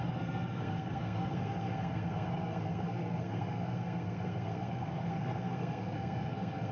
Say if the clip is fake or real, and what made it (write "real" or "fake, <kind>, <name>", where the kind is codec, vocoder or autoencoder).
fake, codec, SNAC